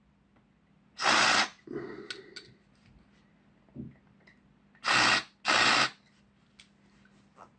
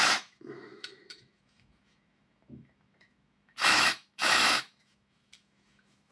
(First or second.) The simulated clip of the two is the second